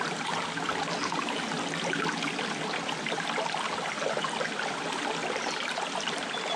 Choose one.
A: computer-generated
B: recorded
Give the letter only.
B